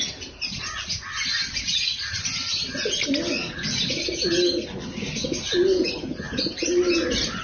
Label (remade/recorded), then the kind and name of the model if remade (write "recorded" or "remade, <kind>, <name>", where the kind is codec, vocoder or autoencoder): recorded